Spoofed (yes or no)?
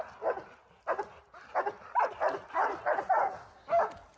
no